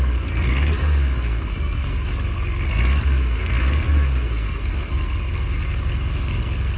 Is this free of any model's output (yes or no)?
no